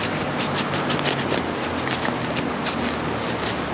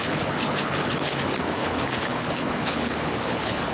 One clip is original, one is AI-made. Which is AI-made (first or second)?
second